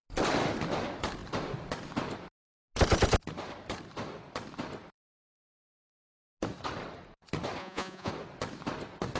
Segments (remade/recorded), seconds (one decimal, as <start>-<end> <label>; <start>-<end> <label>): 0.0-7.6 recorded; 7.6-8.1 remade; 8.1-9.2 recorded